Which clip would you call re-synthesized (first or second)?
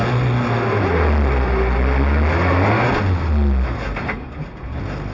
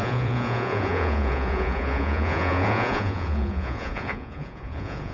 second